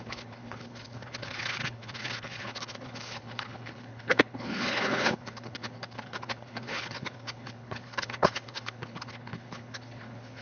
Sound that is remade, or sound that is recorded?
remade